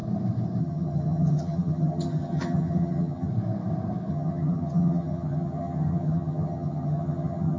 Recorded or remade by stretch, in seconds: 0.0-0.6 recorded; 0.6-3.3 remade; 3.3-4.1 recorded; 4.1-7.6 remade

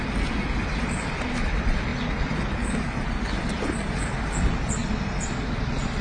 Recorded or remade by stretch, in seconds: 0.0-6.0 recorded

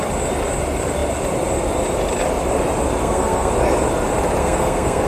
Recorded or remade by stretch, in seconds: 0.0-3.0 recorded; 3.0-3.5 remade; 3.5-4.4 recorded; 4.4-5.1 remade

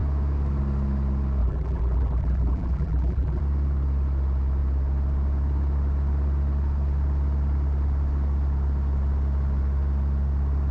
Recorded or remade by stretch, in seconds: 0.0-1.4 recorded; 1.4-3.4 remade; 3.4-10.7 recorded

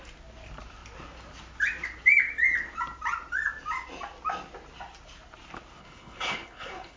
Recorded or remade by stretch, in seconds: 0.0-5.8 recorded; 5.8-7.0 remade

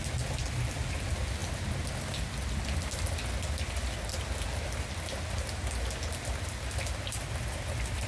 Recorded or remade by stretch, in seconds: 0.0-8.1 recorded